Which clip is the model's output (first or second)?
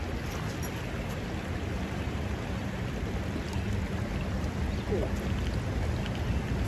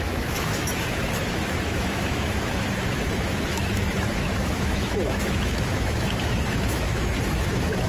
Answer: second